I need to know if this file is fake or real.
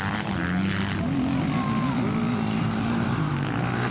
real